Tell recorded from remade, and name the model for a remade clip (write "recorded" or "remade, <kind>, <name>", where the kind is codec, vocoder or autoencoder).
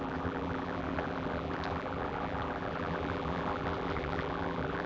remade, vocoder, BigVGAN v2